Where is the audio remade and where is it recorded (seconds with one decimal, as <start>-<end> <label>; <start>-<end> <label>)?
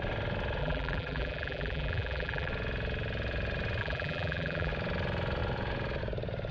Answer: 0.0-0.6 recorded; 0.6-2.5 remade; 2.5-3.8 recorded; 3.8-4.7 remade; 4.7-6.5 recorded